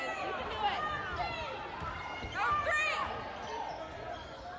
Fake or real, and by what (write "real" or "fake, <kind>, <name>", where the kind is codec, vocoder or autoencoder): real